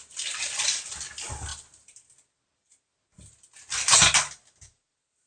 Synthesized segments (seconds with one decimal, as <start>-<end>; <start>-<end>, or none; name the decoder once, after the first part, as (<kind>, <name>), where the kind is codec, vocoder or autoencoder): none